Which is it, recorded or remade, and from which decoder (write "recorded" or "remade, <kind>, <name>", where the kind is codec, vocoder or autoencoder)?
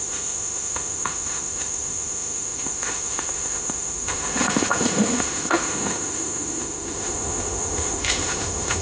remade, autoencoder, DAC-VAE